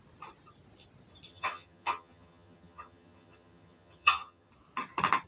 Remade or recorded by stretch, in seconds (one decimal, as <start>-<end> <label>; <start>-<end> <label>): 0.0-1.3 recorded; 1.3-4.5 remade; 4.5-5.3 recorded